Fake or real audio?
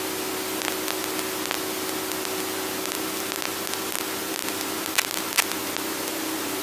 real